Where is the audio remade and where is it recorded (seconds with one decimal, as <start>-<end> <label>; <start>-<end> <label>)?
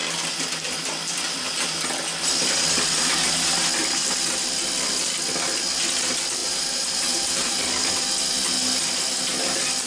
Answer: 0.0-6.4 recorded; 6.4-7.5 remade; 7.5-9.9 recorded